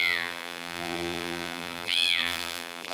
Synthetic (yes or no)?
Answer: yes